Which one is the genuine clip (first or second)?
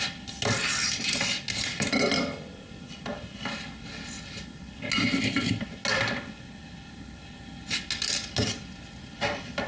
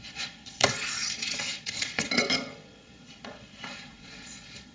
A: first